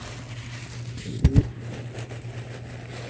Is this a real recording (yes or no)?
yes